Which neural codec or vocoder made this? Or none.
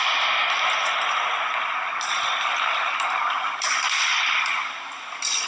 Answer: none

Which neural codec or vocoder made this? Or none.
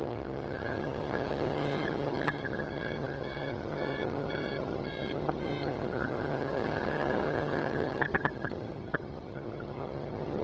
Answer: vocoder, HiFi-GAN